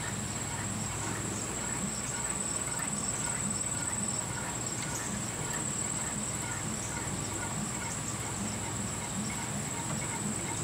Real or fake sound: real